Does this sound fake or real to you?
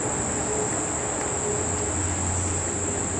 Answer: real